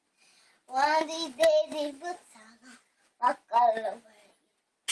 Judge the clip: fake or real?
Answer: real